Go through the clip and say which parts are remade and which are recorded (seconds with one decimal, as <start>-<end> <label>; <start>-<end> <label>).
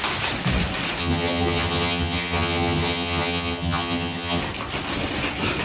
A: 0.0-1.0 recorded; 1.0-4.4 remade; 4.4-5.6 recorded